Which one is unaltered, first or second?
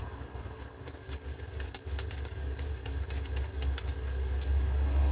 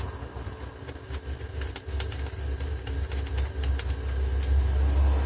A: second